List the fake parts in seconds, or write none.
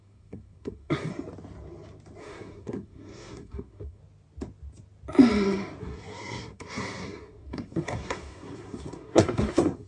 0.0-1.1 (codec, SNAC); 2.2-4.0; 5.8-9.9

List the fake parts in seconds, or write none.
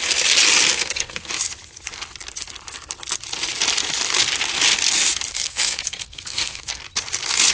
0.7-1.3 (codec, SNAC); 5.3-6.8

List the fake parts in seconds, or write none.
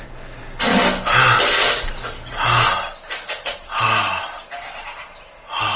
none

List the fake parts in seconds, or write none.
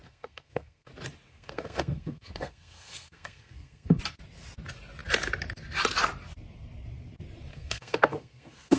0.0-0.9 (codec, SNAC); 1.3-4.0; 7.5-8.8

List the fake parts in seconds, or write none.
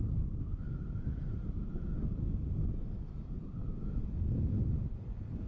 none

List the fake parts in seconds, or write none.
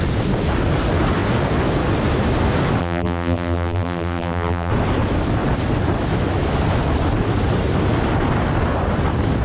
2.8-4.7 (vocoder, BigVGAN v2)